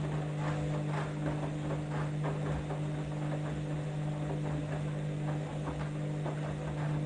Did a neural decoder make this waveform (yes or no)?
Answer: no